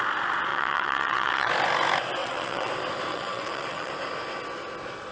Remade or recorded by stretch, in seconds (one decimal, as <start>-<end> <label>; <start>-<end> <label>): 0.0-0.5 recorded; 0.5-1.5 remade; 1.5-2.2 recorded; 2.2-2.7 remade; 2.7-3.1 recorded; 3.1-3.9 remade; 3.9-5.1 recorded

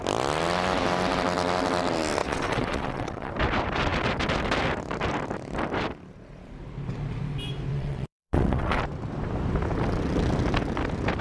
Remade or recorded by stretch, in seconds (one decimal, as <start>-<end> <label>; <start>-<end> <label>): 0.0-2.2 recorded; 2.2-3.3 remade; 3.3-7.7 recorded; 7.7-8.8 remade; 8.8-11.2 recorded